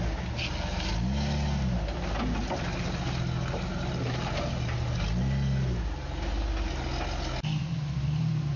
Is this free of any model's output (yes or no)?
yes